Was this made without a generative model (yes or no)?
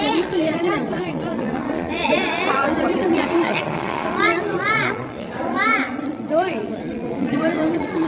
no